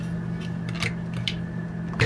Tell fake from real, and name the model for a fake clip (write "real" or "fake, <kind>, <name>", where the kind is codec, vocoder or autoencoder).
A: real